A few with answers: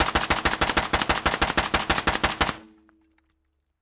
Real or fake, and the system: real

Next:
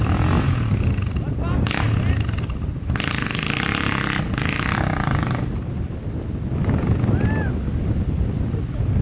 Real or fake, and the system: real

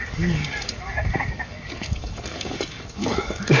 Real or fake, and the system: fake, codec, DAC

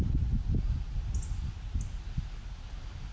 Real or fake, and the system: real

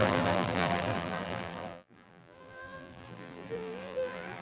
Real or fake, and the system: fake, vocoder, BigVGAN v2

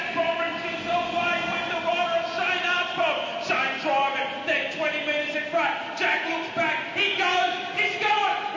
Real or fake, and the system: real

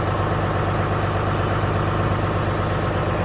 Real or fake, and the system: real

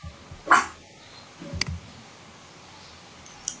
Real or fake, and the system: real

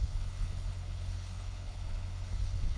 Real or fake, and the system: fake, codec, HILCodec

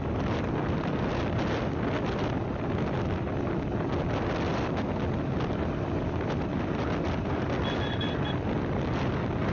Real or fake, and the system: real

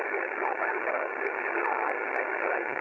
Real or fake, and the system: fake, vocoder, HiFi-GAN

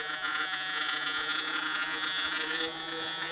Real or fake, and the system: fake, vocoder, Vocos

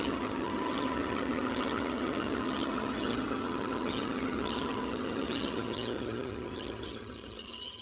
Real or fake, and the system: fake, vocoder, HiFi-GAN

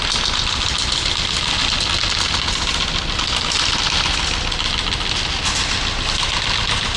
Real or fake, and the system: real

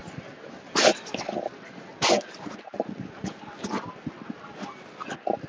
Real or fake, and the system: real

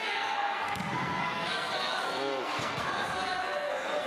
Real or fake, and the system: fake, codec, SNAC